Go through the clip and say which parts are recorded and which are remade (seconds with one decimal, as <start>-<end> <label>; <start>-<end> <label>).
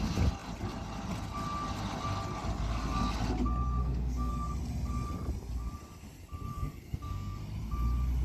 0.0-3.8 recorded; 3.8-4.3 remade; 4.3-6.5 recorded; 6.5-7.4 remade; 7.4-8.2 recorded